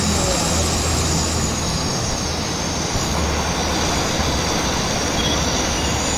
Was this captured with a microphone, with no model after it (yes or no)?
yes